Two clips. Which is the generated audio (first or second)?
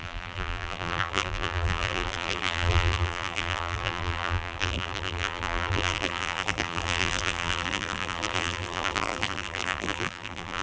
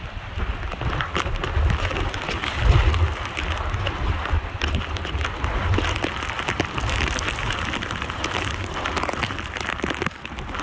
first